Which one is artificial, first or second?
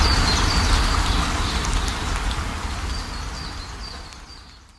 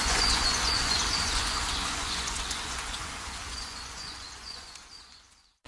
second